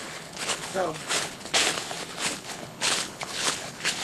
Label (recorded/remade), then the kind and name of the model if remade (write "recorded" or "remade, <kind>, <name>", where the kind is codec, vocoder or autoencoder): remade, codec, HILCodec